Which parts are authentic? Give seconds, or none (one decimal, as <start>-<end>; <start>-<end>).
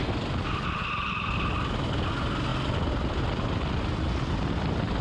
0.0-5.0